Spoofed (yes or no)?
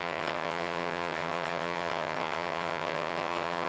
yes